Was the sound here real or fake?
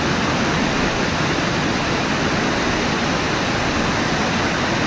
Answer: real